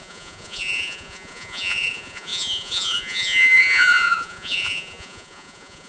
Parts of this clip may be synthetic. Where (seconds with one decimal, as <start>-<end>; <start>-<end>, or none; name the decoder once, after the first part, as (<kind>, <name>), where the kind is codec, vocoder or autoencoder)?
0.0-5.9 (vocoder, Vocos)